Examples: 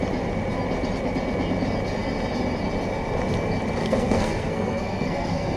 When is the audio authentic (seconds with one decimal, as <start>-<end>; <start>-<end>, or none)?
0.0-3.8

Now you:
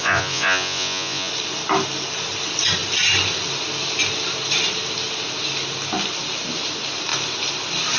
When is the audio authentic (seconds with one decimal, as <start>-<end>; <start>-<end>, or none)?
1.3-8.0

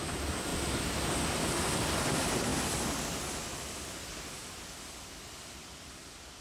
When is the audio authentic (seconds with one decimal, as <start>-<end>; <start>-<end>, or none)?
none

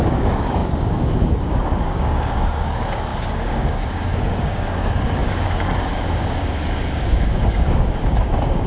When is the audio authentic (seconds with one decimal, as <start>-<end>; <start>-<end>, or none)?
none

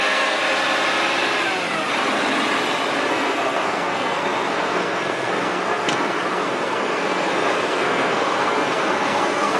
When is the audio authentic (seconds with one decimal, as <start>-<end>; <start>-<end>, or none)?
0.4-3.1

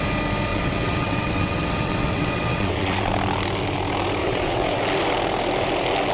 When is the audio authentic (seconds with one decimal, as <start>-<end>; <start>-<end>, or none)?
0.0-0.5; 3.1-4.2; 4.8-6.1

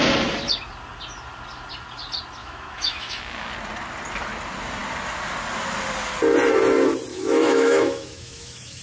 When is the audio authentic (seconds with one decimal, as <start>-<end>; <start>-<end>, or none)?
0.0-2.4; 3.2-7.1